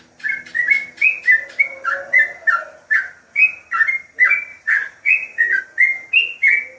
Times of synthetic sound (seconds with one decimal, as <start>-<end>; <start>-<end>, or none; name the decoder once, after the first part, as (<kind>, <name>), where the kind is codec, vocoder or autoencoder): 4.5-5.6 (vocoder, Vocos)